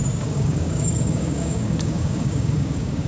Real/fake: fake